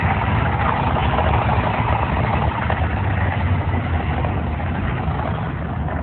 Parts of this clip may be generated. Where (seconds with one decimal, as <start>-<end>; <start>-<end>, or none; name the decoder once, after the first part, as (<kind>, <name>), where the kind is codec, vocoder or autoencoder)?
none

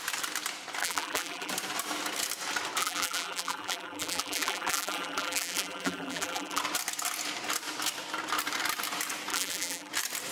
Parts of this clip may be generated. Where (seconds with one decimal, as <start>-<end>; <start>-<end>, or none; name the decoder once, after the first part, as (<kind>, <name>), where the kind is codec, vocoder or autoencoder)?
0.8-1.5 (vocoder, BigVGAN v2); 2.8-6.6; 9.3-9.9

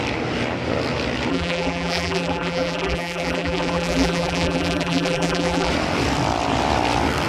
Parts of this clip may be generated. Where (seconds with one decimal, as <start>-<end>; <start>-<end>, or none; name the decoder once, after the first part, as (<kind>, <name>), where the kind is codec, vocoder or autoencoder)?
1.3-5.7 (vocoder, BigVGAN v2)

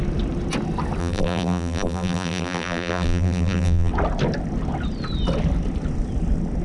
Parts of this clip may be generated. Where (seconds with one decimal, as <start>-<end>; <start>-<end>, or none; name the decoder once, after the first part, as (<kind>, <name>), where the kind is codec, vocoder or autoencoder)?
1.0-3.9 (vocoder, BigVGAN v2)

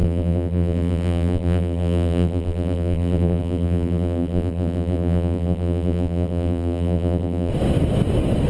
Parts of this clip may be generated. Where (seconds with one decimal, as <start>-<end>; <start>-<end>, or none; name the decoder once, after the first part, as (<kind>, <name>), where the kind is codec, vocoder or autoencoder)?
0.0-7.5 (vocoder, BigVGAN v2)

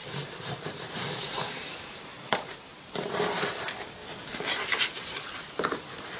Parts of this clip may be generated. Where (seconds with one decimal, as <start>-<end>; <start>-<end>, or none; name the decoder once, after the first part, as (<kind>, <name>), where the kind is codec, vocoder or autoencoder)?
0.0-6.2 (vocoder, BigVGAN v2)

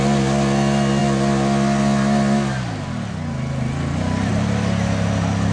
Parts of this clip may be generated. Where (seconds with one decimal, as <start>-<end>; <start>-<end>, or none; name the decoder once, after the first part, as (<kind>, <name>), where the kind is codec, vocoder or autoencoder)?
none

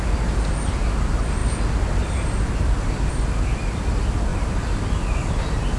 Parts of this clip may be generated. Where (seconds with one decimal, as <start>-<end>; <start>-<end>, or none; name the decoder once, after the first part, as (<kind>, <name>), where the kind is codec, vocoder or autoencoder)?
1.4-3.1 (vocoder, BigVGAN v2); 4.3-5.1